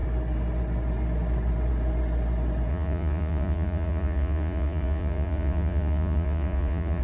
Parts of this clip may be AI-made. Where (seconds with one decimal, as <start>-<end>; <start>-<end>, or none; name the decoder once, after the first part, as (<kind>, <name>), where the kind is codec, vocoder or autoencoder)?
2.7-7.0 (vocoder, Vocos)